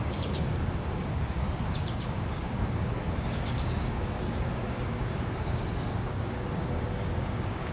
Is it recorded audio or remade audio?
remade